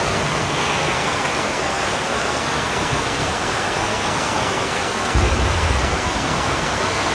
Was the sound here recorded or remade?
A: remade